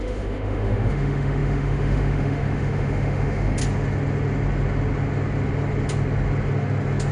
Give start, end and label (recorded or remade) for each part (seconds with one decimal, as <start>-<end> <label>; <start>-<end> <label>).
0.0-3.6 remade; 3.6-7.1 recorded